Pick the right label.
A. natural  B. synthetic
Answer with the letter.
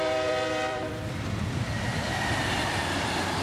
B